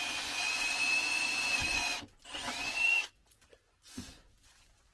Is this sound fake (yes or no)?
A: yes